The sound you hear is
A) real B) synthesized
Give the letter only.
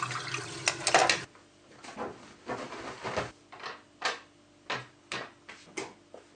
A